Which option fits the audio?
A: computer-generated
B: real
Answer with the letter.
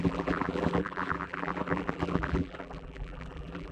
A